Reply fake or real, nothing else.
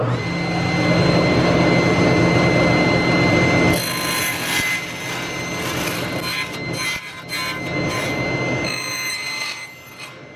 real